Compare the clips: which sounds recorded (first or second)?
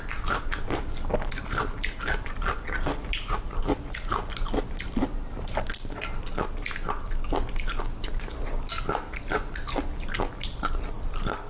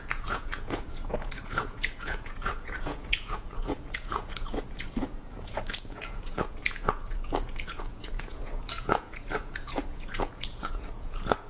first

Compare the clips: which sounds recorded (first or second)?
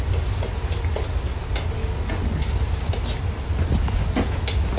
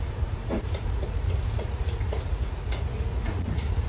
first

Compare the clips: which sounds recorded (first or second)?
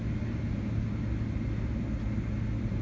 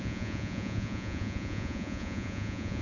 first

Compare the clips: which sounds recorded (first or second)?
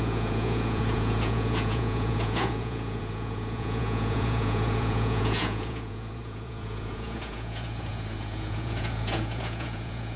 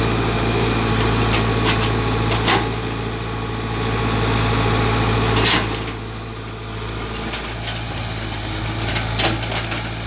second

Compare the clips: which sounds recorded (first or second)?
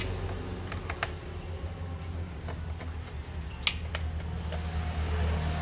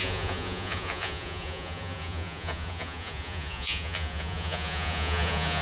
first